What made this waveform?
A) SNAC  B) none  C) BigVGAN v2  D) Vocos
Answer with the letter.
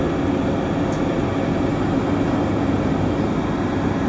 B